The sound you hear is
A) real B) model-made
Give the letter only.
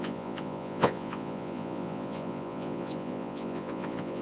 B